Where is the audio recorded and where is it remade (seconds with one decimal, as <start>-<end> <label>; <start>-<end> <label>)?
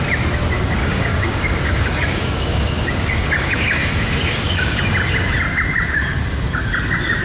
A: 0.0-0.8 recorded; 0.8-4.8 remade; 4.8-7.2 recorded